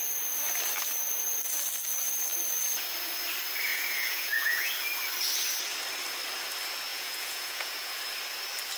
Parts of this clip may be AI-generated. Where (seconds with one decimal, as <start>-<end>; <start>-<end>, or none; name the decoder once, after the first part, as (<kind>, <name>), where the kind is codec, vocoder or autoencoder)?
3.7-4.7 (vocoder, Vocos); 6.9-8.0